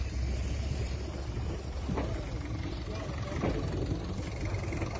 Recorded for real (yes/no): yes